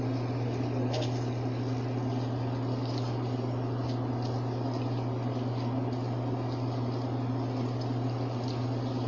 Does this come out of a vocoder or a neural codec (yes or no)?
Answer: no